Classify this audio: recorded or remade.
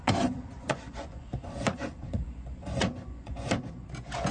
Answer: remade